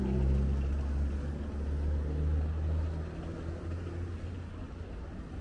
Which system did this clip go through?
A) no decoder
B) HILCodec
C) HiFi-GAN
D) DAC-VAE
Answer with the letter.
A